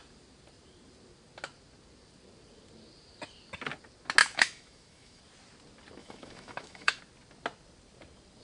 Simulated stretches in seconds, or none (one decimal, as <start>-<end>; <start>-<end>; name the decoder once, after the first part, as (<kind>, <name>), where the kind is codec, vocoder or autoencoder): 4.2-5.2 (autoencoder, DAC-VAE); 6.0-7.0